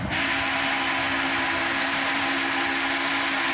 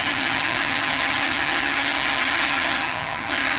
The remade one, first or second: second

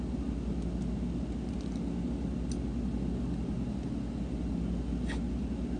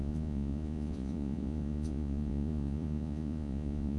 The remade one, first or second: second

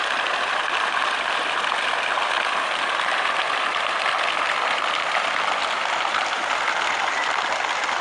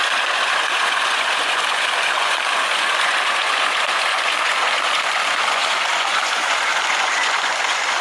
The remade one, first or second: second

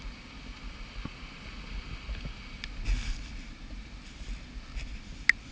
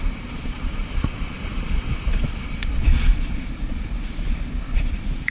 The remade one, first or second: second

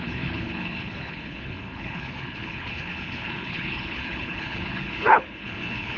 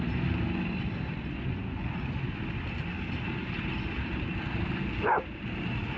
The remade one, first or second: first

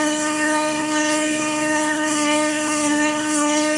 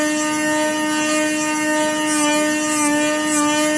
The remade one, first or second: first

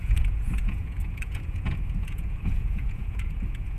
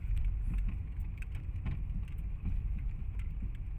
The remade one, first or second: first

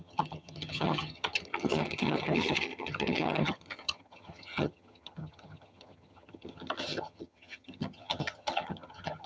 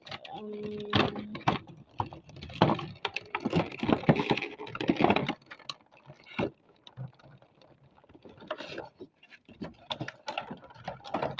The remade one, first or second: first